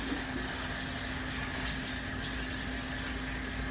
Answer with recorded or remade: recorded